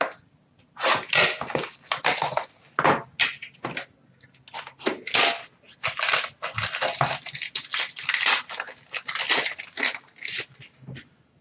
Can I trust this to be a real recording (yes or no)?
yes